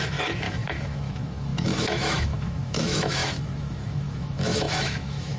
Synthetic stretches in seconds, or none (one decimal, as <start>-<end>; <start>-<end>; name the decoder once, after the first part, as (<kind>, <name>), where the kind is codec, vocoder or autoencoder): 0.0-5.4 (autoencoder, DAC-VAE)

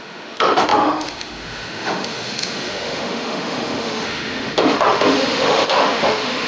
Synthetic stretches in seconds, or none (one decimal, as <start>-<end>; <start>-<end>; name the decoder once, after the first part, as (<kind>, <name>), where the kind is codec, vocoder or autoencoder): 0.0-6.5 (autoencoder, DAC-VAE)

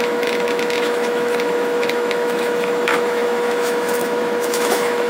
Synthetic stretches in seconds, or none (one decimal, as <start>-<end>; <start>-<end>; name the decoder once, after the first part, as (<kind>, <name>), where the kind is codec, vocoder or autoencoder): 0.0-5.1 (autoencoder, DAC-VAE)

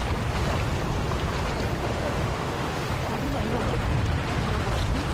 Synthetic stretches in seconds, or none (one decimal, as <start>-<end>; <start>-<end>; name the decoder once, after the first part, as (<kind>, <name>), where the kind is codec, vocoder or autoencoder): 1.8-2.9 (autoencoder, DAC-VAE)